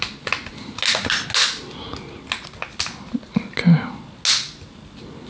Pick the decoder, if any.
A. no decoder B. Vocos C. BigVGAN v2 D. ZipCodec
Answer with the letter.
A